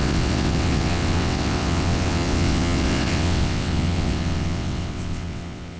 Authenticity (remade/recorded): remade